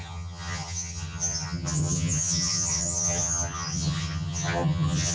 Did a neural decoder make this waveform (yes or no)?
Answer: yes